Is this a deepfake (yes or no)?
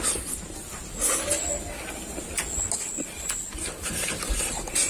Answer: no